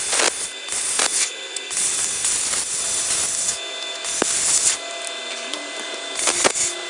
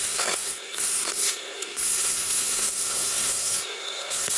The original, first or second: first